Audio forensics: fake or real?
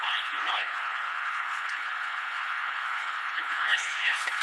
fake